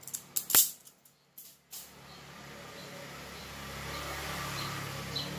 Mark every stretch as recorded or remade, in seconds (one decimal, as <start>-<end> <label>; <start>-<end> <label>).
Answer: 0.0-5.4 recorded